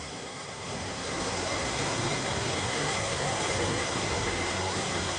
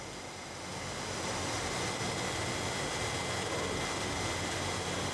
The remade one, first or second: first